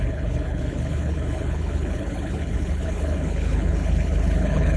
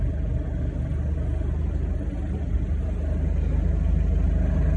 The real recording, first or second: second